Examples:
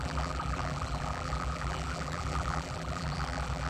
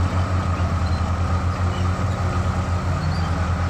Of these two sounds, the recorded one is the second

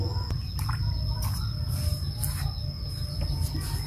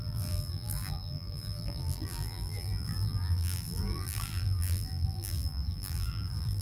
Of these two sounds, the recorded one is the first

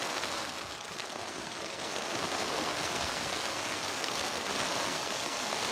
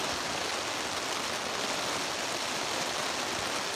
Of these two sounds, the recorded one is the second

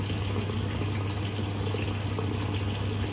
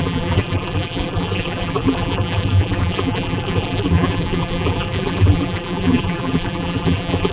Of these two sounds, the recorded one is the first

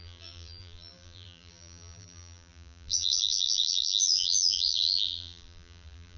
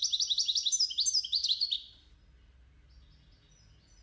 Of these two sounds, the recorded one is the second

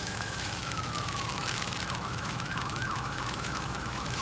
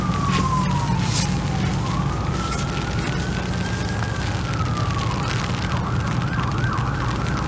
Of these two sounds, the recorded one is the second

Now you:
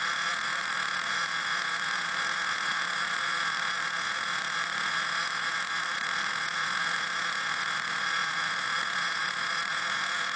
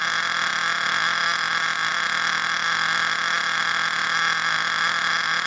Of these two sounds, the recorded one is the second